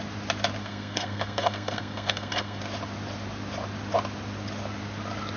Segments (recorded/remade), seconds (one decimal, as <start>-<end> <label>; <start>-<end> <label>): 0.0-0.6 recorded; 0.6-2.6 remade; 2.6-5.4 recorded

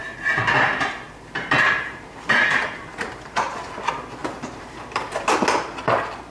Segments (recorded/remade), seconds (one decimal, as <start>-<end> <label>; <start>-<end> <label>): 0.0-3.8 remade; 3.8-4.2 recorded; 4.2-5.3 remade; 5.3-6.3 recorded

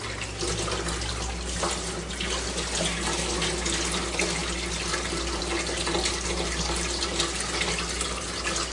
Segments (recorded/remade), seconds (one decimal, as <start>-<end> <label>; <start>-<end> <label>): 0.0-8.7 recorded